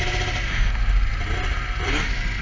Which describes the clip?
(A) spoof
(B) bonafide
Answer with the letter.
B